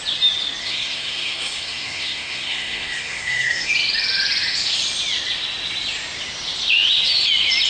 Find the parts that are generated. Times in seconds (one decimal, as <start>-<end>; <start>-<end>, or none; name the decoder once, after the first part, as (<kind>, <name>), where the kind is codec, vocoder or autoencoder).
0.6-3.7 (codec, SNAC)